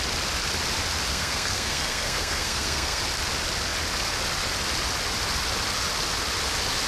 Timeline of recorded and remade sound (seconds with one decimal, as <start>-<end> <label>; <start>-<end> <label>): 0.0-1.1 recorded; 1.1-3.0 remade; 3.0-6.9 recorded